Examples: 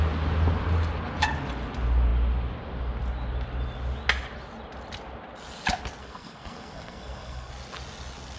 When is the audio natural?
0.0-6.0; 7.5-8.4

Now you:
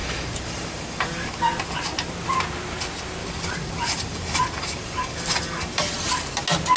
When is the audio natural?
1.4-3.2; 6.0-6.8

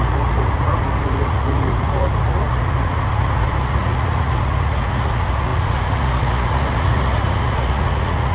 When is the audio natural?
none

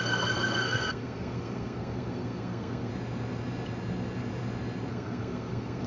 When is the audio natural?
2.9-4.9

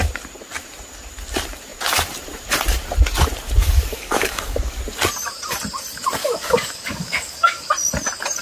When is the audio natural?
0.0-3.6; 4.8-6.2; 7.7-8.4

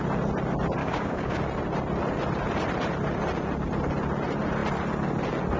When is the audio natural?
0.0-0.8; 1.4-5.6

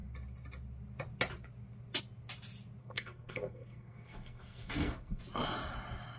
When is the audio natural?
0.0-2.8; 5.2-6.2